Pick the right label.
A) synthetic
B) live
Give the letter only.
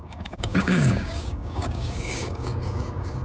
A